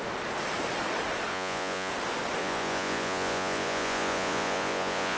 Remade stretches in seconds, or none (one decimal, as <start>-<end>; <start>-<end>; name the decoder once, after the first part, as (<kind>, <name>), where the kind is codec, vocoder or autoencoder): 1.3-1.9 (vocoder, Vocos); 2.4-5.2